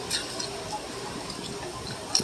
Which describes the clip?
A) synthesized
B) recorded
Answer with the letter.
B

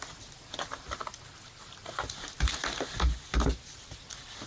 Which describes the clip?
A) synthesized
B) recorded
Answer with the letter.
B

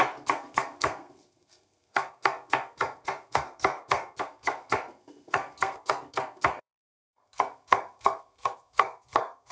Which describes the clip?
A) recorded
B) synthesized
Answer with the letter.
B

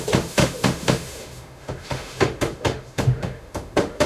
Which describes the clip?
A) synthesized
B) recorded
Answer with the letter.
A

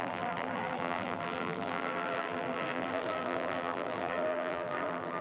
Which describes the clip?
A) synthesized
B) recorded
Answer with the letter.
A